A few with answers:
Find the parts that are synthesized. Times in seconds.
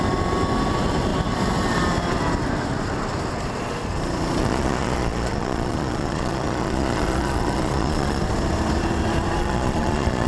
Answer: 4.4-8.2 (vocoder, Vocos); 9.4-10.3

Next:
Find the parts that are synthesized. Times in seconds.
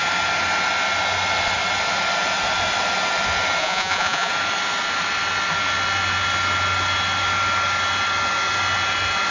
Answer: 3.6-4.3 (vocoder, Vocos)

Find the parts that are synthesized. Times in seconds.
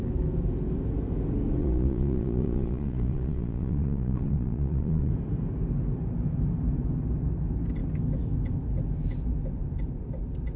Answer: 1.6-5.1 (vocoder, Vocos)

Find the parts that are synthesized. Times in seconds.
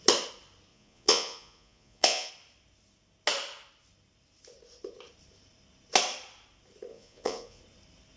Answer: 0.7-2.3 (vocoder, Vocos); 6.9-7.6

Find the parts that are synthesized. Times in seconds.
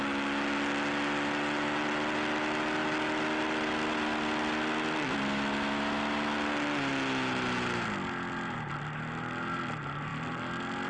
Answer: none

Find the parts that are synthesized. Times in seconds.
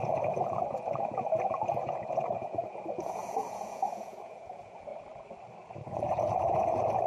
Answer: 0.0-4.9 (vocoder, Vocos); 5.9-7.1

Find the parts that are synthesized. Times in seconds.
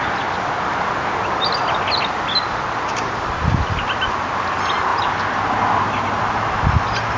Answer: none